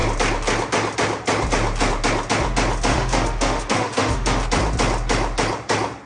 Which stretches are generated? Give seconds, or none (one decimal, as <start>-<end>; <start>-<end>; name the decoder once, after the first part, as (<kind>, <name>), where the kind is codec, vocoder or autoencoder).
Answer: 2.9-4.4 (autoencoder, DAC-VAE)